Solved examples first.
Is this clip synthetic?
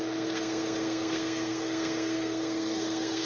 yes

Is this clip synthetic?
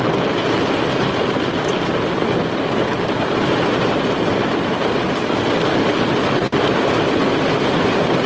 no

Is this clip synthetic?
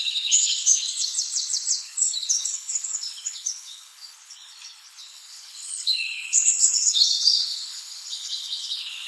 yes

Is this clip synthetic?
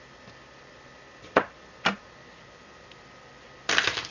yes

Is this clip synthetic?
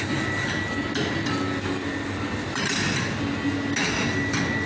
no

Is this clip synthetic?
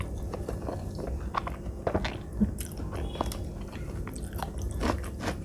no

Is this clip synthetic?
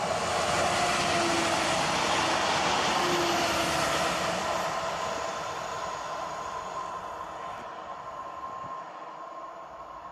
no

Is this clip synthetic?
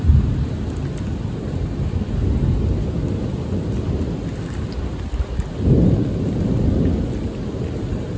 no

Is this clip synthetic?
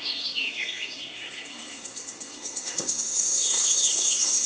yes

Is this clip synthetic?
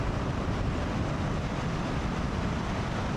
no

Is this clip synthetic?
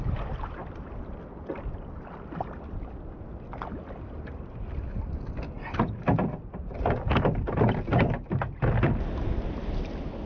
no